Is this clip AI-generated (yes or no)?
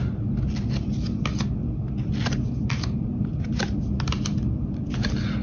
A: no